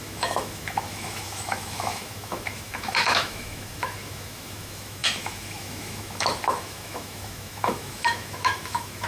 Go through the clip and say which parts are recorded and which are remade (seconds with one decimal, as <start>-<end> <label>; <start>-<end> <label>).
0.0-9.1 remade